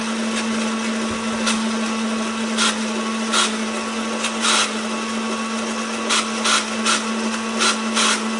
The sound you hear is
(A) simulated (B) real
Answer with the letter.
B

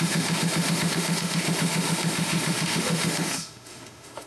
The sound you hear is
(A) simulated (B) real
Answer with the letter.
A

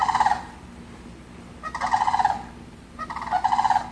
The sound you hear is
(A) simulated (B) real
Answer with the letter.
B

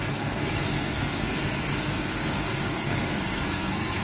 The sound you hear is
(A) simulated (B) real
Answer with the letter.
A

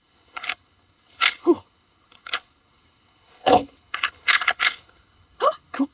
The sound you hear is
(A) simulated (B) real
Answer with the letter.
A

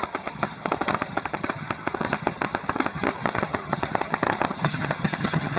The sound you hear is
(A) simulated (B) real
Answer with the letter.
A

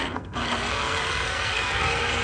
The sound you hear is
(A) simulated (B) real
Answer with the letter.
A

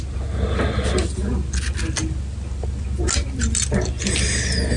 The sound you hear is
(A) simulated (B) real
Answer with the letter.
B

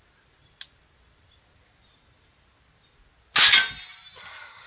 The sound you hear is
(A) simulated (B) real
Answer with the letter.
B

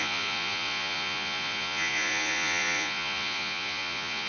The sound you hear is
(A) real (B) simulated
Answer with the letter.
B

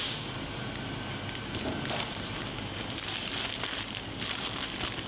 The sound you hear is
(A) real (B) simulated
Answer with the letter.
A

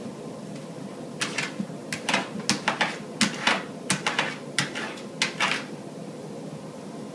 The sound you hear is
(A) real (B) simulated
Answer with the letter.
A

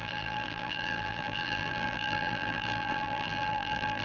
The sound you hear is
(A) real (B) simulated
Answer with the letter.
B